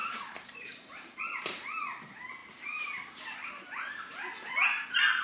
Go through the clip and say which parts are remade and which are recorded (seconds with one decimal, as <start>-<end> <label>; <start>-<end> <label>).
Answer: 0.0-1.2 remade; 1.2-2.4 recorded; 2.4-3.2 remade; 3.2-5.2 recorded